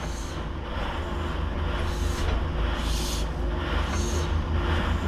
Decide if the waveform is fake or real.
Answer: real